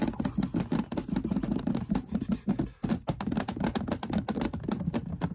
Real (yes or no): yes